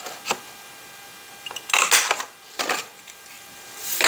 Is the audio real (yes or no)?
yes